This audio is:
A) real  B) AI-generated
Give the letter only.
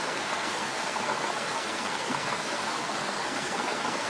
B